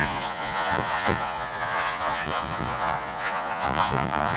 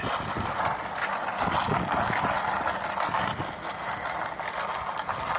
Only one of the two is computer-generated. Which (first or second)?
first